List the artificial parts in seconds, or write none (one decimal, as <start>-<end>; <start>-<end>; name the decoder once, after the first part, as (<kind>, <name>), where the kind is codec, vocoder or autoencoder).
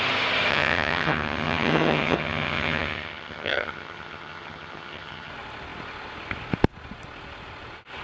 0.5-5.3 (vocoder, HiFi-GAN)